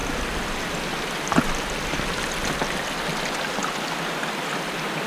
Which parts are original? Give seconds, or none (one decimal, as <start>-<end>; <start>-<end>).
0.0-5.1